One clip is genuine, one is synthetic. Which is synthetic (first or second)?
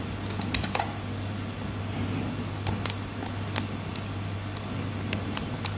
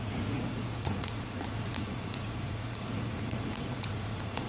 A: second